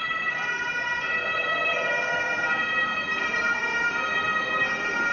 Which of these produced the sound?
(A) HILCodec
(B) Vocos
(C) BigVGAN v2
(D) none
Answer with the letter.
D